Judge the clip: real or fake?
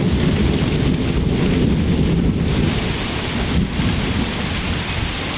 real